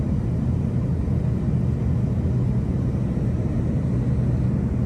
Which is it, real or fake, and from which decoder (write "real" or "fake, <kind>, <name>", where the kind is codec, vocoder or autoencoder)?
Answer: real